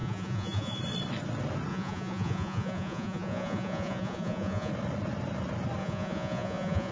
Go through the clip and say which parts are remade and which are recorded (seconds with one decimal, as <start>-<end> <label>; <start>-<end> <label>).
0.0-0.8 remade; 0.8-1.7 recorded; 1.7-4.7 remade; 4.7-5.8 recorded; 5.8-6.9 remade